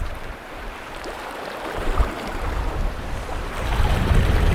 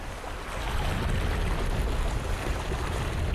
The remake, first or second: first